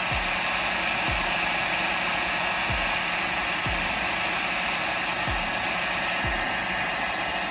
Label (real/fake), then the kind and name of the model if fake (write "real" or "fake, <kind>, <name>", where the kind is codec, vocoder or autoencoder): real